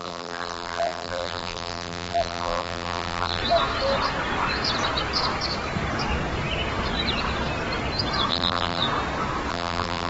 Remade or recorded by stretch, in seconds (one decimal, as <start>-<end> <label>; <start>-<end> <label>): 0.0-3.4 remade; 3.4-8.3 recorded; 8.3-8.8 remade; 8.8-9.5 recorded; 9.5-10.1 remade